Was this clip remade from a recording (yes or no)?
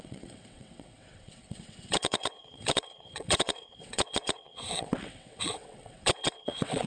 yes